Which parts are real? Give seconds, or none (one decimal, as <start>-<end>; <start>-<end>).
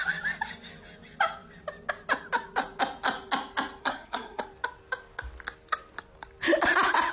0.0-3.8; 4.4-7.1